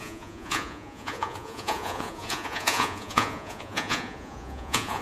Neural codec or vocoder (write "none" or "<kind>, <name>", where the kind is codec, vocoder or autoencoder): vocoder, Vocos